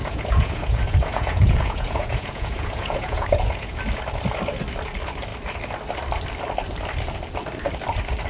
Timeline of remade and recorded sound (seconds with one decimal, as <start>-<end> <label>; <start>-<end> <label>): 0.0-3.8 remade; 3.8-8.3 recorded